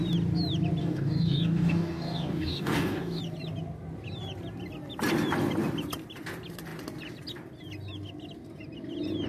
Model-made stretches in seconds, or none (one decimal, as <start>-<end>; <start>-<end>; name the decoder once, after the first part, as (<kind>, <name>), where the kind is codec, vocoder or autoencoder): 0.8-3.2 (codec, DAC)